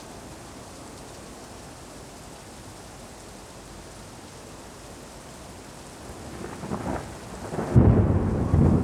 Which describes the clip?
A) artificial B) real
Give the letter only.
B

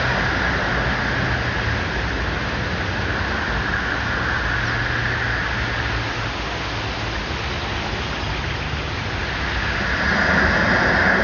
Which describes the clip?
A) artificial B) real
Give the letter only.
B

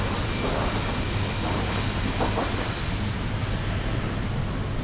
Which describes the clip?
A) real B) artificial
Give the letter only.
A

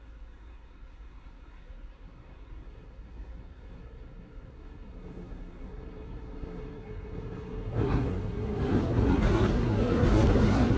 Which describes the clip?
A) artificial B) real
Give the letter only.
A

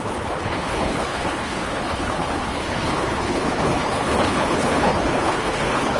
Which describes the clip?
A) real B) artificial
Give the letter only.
B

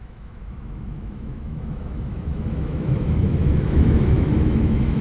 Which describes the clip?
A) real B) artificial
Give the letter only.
B